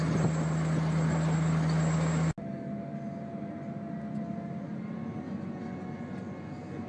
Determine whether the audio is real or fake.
real